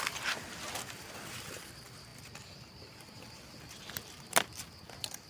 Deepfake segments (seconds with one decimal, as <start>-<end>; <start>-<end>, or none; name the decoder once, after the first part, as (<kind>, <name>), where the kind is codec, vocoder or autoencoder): none